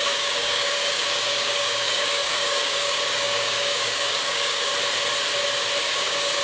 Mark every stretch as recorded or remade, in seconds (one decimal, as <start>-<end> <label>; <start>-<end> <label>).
0.0-4.7 remade; 4.7-5.8 recorded; 5.8-6.4 remade